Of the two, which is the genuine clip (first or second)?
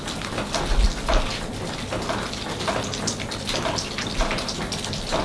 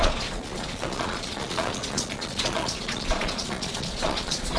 first